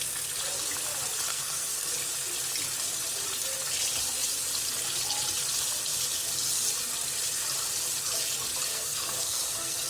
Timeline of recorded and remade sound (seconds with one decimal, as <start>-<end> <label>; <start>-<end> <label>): 0.0-1.3 recorded; 1.3-1.9 remade; 1.9-8.7 recorded; 8.7-9.9 remade